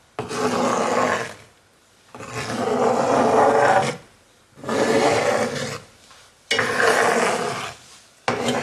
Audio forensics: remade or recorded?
recorded